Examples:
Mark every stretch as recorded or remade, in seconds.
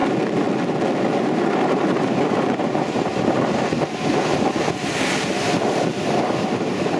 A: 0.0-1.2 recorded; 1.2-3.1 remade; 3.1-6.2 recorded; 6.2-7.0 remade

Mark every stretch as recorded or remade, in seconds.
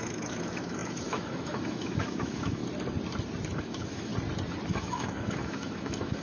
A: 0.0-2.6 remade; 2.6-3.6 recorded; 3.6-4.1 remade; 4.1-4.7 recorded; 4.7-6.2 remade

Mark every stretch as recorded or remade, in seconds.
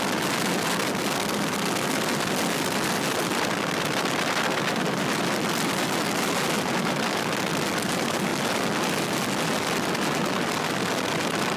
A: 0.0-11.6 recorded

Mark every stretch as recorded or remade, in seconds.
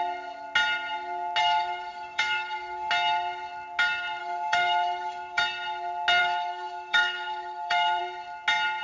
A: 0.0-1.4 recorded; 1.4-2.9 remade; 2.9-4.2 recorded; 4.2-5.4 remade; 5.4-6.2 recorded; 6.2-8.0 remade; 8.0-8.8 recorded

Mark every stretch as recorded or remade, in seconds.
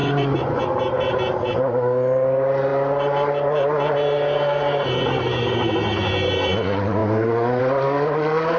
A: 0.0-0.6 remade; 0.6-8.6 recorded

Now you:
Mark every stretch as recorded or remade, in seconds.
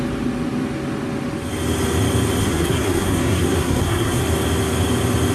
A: 0.0-2.4 recorded; 2.4-4.2 remade; 4.2-5.3 recorded